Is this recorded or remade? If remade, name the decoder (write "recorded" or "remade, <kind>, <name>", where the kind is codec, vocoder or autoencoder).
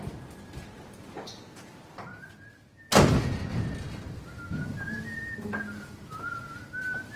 recorded